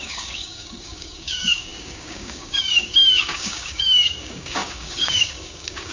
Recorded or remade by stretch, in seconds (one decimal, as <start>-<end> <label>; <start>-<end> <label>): 0.0-5.9 remade